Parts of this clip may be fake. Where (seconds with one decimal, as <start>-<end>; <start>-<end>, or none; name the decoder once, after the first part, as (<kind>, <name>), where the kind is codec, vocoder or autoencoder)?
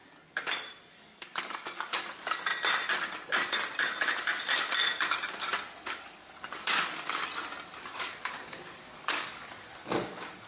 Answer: 0.9-2.5 (codec, DAC); 5.8-7.2; 7.8-10.5